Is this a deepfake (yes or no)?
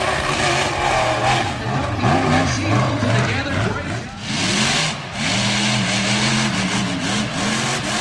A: no